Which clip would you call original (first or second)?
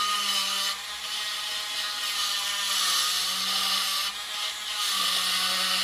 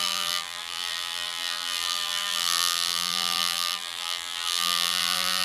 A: first